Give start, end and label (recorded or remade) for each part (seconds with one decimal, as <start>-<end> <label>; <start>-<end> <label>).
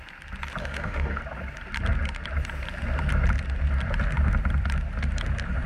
0.0-0.6 recorded; 0.6-1.2 remade; 1.2-5.7 recorded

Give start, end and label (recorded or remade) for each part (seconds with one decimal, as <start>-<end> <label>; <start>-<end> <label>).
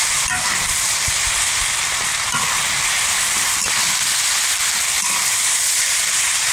0.0-4.6 remade; 4.6-5.4 recorded; 5.4-6.5 remade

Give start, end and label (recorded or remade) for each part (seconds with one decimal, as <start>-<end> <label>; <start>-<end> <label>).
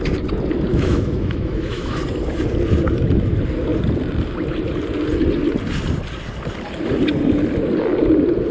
0.0-0.7 recorded; 0.7-2.0 remade; 2.0-8.5 recorded